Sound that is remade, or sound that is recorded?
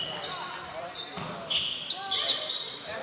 recorded